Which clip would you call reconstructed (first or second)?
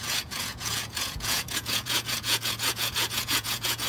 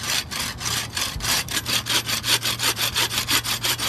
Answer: first